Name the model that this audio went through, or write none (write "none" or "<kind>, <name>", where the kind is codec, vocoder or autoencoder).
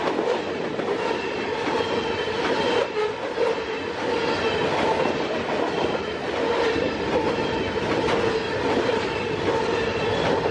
none